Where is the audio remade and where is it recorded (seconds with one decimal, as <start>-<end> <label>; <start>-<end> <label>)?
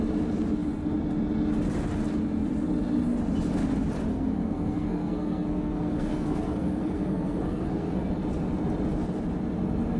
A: 0.0-4.1 recorded; 4.1-8.1 remade; 8.1-10.0 recorded